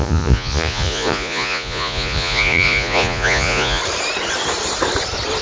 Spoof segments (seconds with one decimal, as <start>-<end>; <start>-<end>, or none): 0.0-3.8